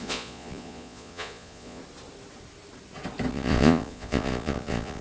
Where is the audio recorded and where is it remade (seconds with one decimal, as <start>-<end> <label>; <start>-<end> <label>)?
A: 0.0-1.8 remade; 1.8-3.3 recorded; 3.3-5.0 remade